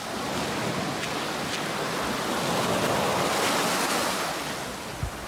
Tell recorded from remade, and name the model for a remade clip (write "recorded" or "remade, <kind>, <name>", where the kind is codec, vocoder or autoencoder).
recorded